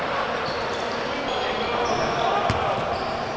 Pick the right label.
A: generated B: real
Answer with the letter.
B